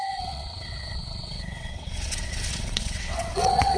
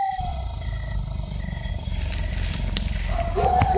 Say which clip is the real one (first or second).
second